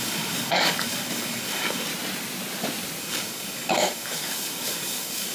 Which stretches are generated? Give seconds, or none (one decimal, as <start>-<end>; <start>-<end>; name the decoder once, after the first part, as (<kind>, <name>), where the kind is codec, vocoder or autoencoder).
0.0-1.9 (codec, DAC); 3.0-5.3